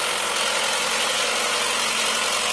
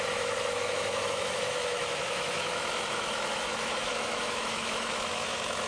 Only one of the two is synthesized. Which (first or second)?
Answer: second